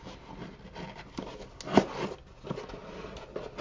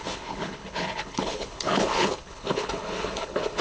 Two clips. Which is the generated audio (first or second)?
second